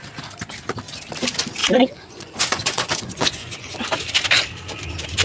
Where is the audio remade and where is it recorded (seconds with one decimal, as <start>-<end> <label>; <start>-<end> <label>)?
0.0-1.6 recorded; 1.6-3.8 remade; 3.8-5.2 recorded